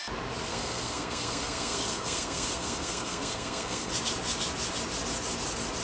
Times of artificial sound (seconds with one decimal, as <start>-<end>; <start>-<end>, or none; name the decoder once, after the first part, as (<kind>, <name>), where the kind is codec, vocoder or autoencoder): 0.5-3.9 (codec, SNAC)